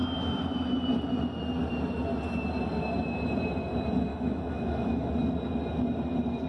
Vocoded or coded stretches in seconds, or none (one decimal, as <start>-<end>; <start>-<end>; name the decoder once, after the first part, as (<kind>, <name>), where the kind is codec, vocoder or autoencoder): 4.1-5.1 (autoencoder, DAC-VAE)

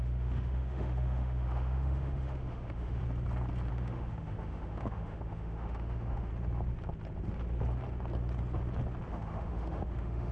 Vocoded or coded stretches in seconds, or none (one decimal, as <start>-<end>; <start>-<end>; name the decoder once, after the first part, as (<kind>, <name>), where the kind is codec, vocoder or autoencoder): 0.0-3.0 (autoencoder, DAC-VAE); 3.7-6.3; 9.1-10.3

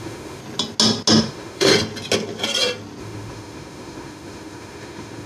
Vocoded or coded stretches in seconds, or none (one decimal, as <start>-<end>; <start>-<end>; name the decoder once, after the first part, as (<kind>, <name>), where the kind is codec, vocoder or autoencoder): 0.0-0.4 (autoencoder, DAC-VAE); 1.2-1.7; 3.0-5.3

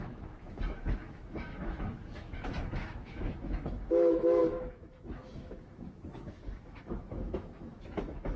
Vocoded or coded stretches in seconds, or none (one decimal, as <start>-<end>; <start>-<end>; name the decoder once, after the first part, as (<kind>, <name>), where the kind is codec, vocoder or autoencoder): 0.0-8.4 (autoencoder, DAC-VAE)

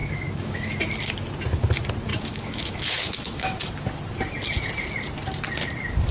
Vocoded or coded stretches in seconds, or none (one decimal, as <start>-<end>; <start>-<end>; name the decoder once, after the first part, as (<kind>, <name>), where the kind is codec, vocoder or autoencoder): 0.0-0.7 (autoencoder, DAC-VAE); 2.1-3.7

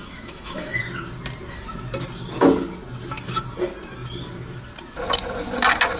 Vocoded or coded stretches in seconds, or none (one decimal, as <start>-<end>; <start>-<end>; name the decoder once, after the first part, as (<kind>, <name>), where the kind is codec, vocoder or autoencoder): 0.0-0.8 (autoencoder, DAC-VAE)

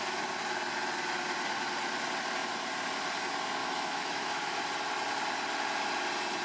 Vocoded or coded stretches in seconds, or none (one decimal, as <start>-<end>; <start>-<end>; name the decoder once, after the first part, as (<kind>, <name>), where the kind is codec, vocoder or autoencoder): 3.6-4.6 (autoencoder, DAC-VAE)

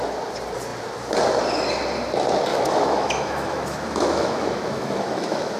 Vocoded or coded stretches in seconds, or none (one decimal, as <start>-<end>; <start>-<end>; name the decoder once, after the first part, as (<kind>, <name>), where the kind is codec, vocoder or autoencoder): 2.5-5.6 (autoencoder, DAC-VAE)